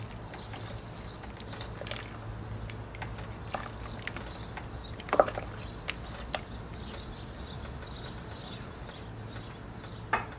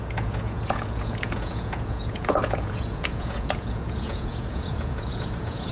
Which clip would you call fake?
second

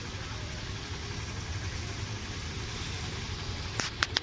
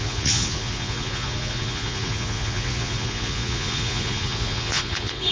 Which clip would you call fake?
second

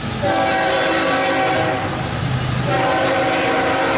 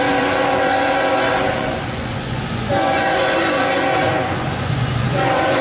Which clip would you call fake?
second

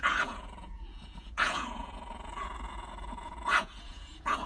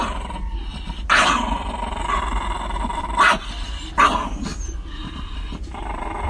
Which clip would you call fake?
first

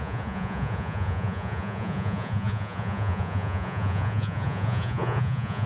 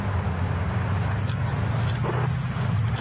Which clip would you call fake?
first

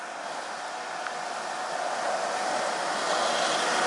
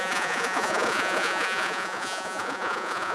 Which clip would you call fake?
second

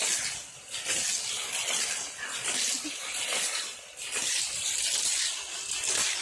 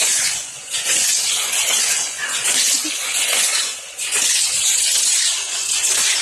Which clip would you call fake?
second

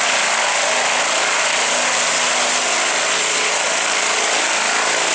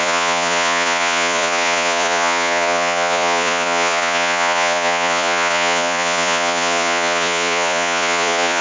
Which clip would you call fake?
second